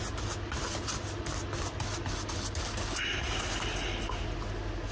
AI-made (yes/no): no